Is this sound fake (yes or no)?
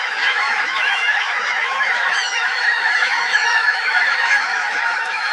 yes